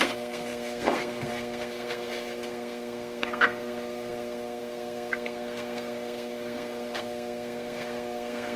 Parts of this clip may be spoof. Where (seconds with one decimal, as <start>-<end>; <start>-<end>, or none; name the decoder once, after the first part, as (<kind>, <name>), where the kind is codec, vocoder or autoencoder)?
0.0-8.6 (codec, SNAC)